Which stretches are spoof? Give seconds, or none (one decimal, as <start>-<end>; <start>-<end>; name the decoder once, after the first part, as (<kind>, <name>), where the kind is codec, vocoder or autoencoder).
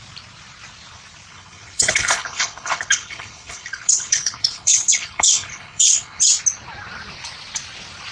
1.3-6.2 (codec, HILCodec)